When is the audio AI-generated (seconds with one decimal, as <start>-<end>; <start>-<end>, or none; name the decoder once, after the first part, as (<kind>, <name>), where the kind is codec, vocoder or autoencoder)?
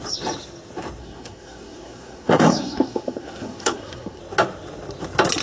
1.0-4.2 (codec, SNAC)